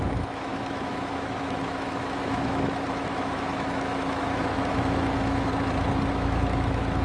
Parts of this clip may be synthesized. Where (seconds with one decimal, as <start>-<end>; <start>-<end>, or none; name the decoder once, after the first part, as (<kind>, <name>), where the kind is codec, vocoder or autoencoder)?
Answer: 0.0-5.5 (autoencoder, DAC-VAE); 6.1-7.0